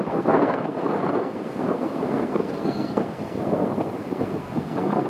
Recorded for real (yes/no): no